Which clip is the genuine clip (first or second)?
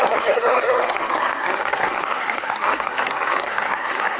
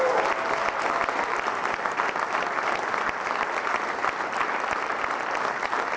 second